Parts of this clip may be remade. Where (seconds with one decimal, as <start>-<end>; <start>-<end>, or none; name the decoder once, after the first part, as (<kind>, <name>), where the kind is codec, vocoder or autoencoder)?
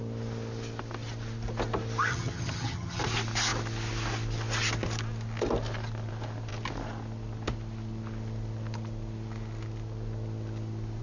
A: 2.1-3.0 (vocoder, HiFi-GAN)